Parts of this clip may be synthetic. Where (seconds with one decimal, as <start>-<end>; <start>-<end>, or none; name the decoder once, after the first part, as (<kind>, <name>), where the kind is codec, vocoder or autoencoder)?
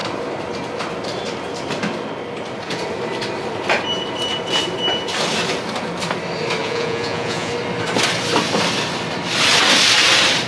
6.6-7.5 (vocoder, Vocos)